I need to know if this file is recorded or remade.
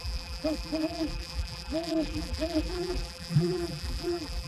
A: remade